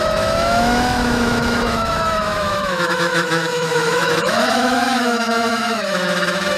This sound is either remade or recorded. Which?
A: remade